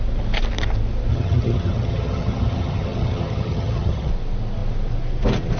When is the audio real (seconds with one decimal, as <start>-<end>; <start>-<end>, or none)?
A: 0.0-1.1; 4.1-5.6